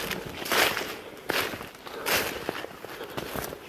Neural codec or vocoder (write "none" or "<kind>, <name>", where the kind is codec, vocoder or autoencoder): none